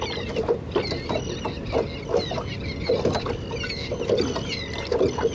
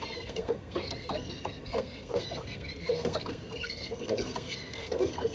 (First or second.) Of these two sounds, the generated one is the second